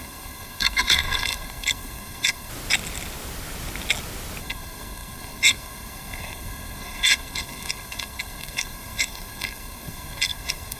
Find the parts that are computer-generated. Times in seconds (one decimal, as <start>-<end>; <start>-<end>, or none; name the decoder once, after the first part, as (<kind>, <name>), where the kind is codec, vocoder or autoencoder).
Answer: 0.0-2.5 (codec, SNAC); 4.4-10.8